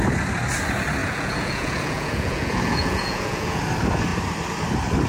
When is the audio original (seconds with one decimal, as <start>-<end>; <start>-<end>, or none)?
0.0-1.0; 3.6-5.1